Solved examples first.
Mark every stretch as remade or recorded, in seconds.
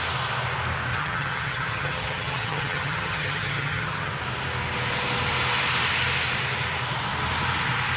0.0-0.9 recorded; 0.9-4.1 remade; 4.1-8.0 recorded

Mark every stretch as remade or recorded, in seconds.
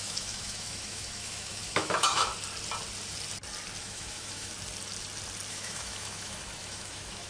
0.0-2.3 remade; 2.3-3.8 recorded; 3.8-4.5 remade; 4.5-5.5 recorded; 5.5-7.3 remade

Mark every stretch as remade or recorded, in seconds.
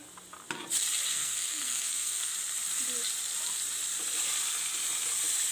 0.0-1.1 recorded; 1.1-2.3 remade; 2.3-5.5 recorded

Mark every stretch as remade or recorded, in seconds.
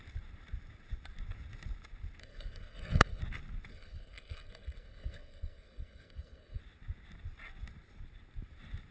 0.0-2.2 recorded; 2.2-3.2 remade; 3.2-3.7 recorded; 3.7-6.6 remade; 6.6-8.9 recorded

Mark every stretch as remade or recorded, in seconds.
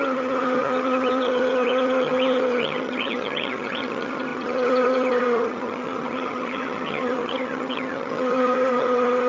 0.0-9.3 remade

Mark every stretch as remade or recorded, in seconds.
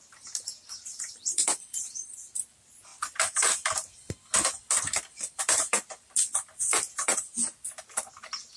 0.0-2.9 remade; 2.9-5.4 recorded; 5.4-7.3 remade; 7.3-8.0 recorded; 8.0-8.6 remade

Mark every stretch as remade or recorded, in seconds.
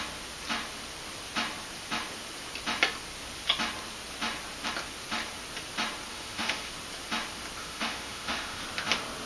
0.0-6.1 recorded; 6.1-6.7 remade; 6.7-7.6 recorded; 7.6-8.6 remade; 8.6-9.3 recorded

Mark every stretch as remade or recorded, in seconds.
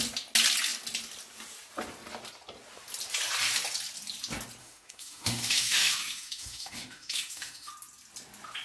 0.0-4.6 recorded; 4.6-7.7 remade; 7.7-8.6 recorded